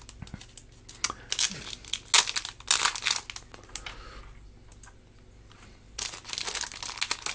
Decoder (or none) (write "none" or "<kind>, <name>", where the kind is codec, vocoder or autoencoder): none